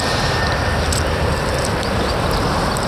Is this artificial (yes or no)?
no